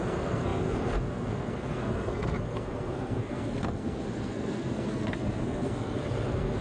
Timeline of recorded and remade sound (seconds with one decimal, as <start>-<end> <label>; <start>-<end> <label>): 0.0-6.6 remade